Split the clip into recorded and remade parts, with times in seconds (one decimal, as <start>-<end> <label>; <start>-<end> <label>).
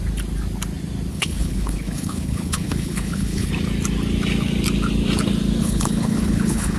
0.0-1.1 recorded; 1.1-3.5 remade; 3.5-5.6 recorded; 5.6-6.8 remade